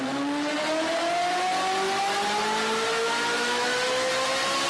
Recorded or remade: recorded